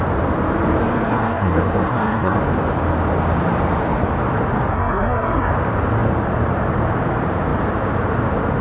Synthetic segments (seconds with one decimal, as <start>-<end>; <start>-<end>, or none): 0.8-2.4; 4.7-5.5

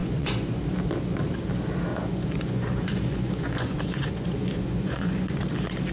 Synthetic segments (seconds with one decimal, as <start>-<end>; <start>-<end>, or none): 0.0-0.6; 1.9-5.4

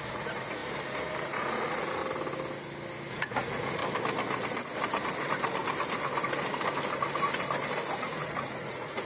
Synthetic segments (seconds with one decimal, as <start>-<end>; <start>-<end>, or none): 0.0-0.6; 1.2-2.0; 3.1-3.8; 8.0-9.1

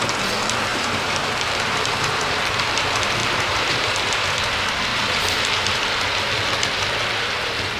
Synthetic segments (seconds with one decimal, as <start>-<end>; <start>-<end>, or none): 0.7-2.3; 3.2-4.4; 4.9-5.5

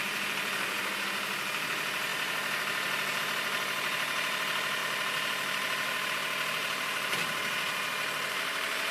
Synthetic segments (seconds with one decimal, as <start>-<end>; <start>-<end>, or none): 0.0-2.1; 3.2-7.2; 8.3-8.9